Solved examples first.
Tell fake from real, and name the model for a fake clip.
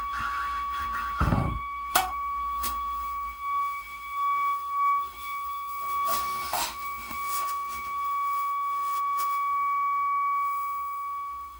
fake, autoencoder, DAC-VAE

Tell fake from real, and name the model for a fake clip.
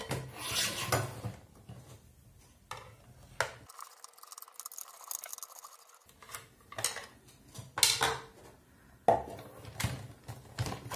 real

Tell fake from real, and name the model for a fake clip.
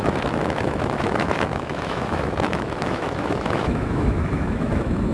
fake, autoencoder, DAC-VAE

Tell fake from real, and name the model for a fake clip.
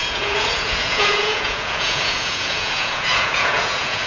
fake, vocoder, Vocos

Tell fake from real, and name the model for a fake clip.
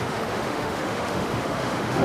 fake, autoencoder, DAC-VAE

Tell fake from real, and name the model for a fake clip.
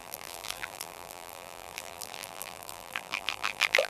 fake, vocoder, BigVGAN v2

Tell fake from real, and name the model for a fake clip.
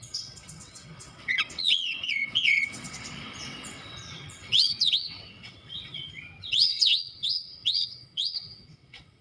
fake, vocoder, WaveNeXt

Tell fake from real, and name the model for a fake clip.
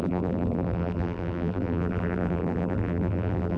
fake, vocoder, BigVGAN v2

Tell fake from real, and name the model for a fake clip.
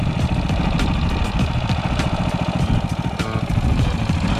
real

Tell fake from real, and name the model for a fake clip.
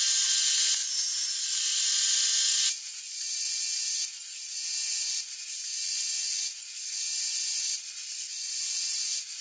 real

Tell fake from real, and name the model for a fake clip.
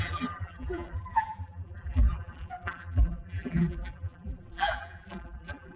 fake, vocoder, BigVGAN v2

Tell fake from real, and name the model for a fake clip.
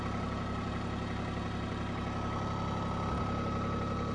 real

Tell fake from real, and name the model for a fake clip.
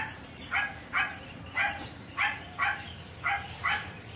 real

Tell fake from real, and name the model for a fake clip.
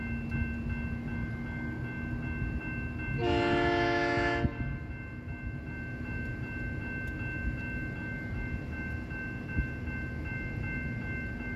real